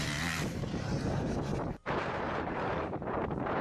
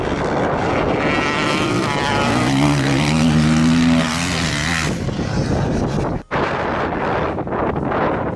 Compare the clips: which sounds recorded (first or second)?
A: second